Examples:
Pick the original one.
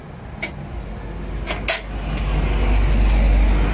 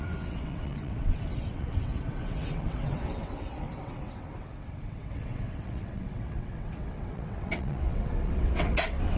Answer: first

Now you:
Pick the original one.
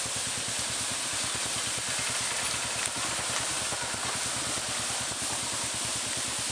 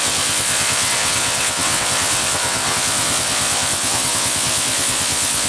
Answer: first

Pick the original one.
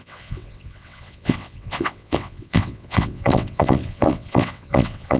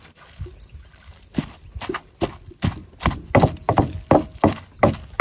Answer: second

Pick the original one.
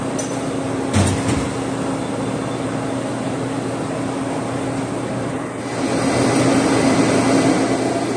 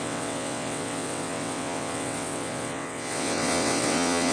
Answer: first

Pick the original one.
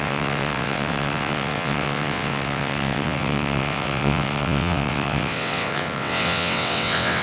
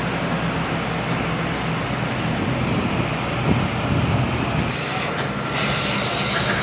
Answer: second